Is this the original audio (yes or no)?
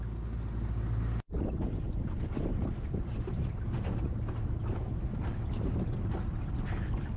yes